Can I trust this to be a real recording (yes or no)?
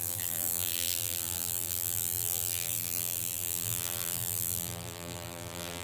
no